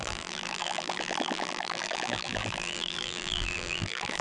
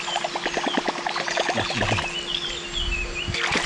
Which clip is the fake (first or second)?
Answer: first